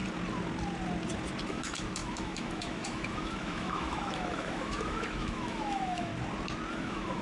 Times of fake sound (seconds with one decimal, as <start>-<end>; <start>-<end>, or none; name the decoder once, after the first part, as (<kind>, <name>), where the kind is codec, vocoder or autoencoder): 1.5-6.1 (autoencoder, DAC-VAE); 6.7-7.2